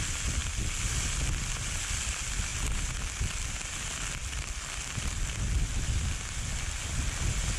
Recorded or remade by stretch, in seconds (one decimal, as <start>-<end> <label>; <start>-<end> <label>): 0.0-7.6 recorded